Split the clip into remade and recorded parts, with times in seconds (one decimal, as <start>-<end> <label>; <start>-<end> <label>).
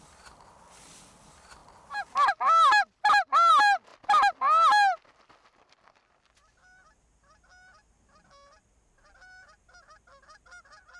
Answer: 0.0-11.0 recorded